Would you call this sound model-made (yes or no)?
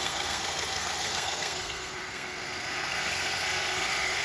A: yes